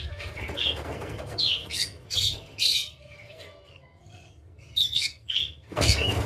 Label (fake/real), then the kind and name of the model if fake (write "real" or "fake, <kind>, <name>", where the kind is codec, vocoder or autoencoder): fake, codec, SNAC